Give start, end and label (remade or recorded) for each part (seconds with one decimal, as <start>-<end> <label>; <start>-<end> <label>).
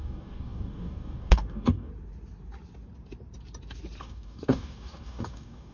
0.0-1.9 remade; 1.9-4.0 recorded; 4.0-5.7 remade